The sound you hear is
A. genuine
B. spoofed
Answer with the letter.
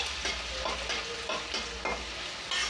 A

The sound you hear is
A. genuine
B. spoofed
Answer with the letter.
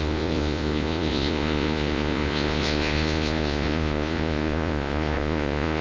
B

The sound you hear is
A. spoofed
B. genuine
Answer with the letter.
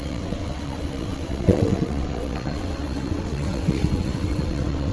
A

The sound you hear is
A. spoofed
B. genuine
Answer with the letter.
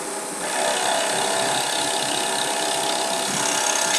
B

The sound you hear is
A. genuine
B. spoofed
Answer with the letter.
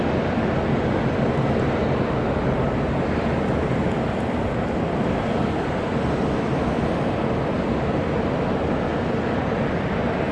A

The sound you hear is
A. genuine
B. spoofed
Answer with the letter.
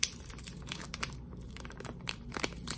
B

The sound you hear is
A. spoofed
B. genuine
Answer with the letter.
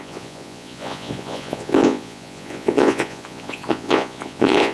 A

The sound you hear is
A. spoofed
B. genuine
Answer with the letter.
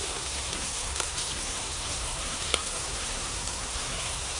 A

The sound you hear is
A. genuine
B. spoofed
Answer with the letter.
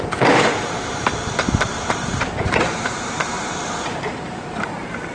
B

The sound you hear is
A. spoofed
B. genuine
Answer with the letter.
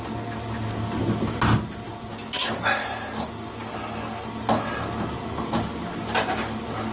B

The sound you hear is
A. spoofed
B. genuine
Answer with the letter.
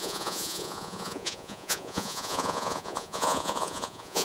A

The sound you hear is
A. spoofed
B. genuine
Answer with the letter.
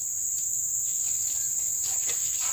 B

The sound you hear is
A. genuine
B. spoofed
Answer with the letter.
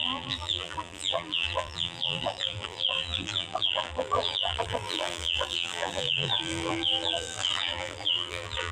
B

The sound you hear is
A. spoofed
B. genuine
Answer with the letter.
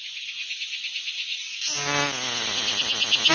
B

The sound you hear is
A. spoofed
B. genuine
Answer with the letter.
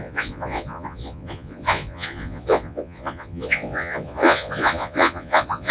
A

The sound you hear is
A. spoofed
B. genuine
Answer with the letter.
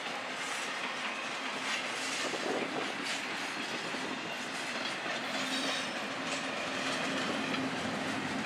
B